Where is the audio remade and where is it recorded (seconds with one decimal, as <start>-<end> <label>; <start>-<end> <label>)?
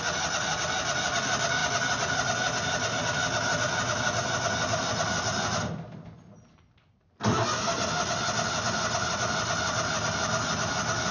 0.0-11.1 recorded